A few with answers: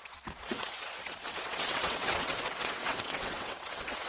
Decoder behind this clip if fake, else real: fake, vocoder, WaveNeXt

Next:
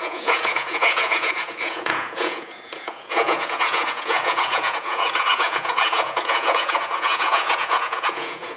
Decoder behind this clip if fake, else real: fake, vocoder, Vocos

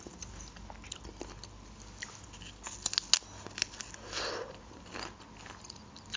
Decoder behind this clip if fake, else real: real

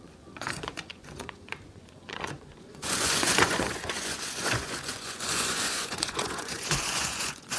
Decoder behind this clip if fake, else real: fake, vocoder, Vocos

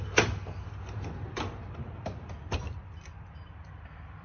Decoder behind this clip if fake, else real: fake, vocoder, BigVGAN v2